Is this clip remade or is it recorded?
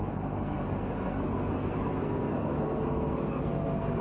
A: remade